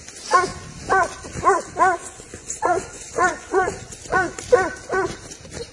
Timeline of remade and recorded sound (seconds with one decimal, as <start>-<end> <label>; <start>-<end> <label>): 0.0-2.0 recorded; 2.0-4.4 remade; 4.4-5.7 recorded